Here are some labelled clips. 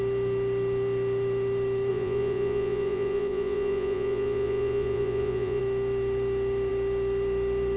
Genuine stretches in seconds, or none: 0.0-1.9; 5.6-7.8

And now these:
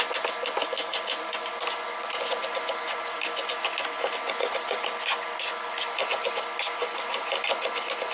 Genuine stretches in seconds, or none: 0.0-8.1